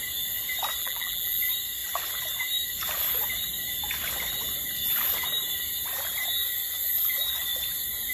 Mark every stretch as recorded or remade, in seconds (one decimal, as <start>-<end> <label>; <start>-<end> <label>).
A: 0.0-0.8 recorded; 0.8-1.4 remade; 1.4-8.1 recorded

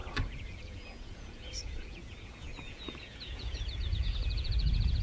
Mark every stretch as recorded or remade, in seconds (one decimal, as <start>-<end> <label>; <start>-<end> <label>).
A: 0.0-5.0 remade

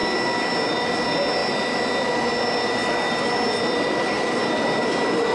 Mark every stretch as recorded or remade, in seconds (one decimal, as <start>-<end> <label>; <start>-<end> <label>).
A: 0.0-5.3 recorded

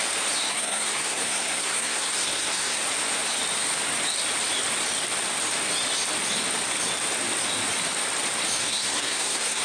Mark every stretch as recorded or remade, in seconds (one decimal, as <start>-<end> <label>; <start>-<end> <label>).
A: 0.0-0.5 recorded; 0.5-2.8 remade; 2.8-8.6 recorded; 8.6-9.6 remade

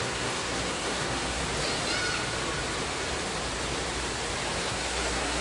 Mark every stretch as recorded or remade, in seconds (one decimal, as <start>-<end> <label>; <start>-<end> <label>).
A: 0.0-1.4 remade; 1.4-4.6 recorded; 4.6-5.4 remade

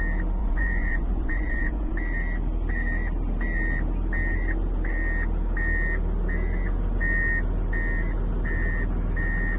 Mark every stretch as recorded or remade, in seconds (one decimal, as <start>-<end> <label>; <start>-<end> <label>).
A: 0.0-0.4 recorded; 0.4-1.9 remade; 1.9-9.6 recorded

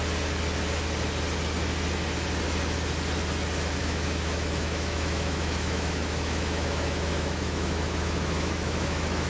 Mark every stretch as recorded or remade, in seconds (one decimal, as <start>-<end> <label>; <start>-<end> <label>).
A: 0.0-3.8 recorded; 3.8-9.3 remade